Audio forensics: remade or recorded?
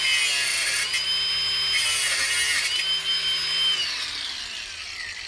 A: recorded